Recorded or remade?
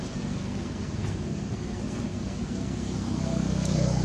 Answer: remade